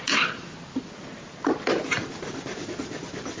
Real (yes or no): yes